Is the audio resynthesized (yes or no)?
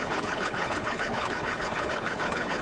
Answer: yes